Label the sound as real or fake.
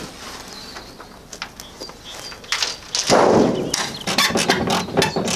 real